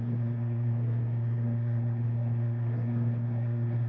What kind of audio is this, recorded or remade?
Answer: remade